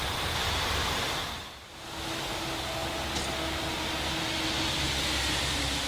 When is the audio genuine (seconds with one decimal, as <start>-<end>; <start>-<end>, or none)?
1.2-4.7